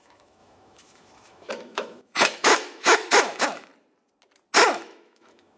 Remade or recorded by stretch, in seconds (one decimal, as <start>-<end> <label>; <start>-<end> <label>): 0.0-3.7 remade; 3.7-4.7 recorded; 4.7-5.6 remade